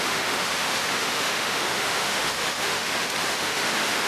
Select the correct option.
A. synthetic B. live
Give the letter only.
A